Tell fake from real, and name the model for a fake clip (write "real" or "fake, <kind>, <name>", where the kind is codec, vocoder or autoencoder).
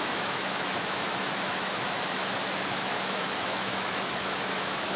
fake, autoencoder, DAC-VAE